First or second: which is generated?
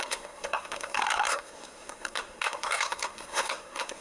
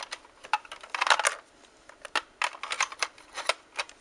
first